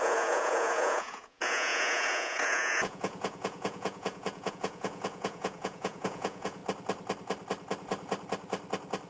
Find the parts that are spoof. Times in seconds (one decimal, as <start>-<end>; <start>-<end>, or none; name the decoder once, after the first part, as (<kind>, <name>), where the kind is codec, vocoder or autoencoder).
0.0-6.6 (vocoder, Vocos)